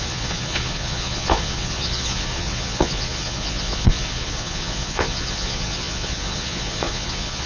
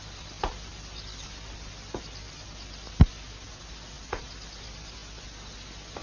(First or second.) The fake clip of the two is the first